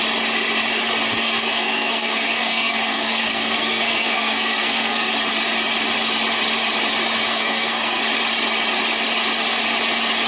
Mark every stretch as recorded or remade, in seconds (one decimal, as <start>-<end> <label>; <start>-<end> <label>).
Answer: 0.0-1.2 recorded; 1.2-5.1 remade; 5.1-7.3 recorded; 7.3-8.0 remade; 8.0-10.3 recorded